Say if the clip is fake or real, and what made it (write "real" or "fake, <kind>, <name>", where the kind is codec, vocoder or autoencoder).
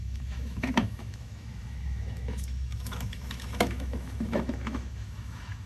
fake, autoencoder, DAC-VAE